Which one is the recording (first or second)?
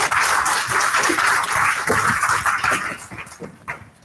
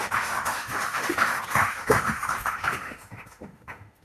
first